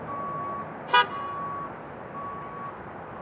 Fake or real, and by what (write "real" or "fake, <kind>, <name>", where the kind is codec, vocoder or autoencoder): real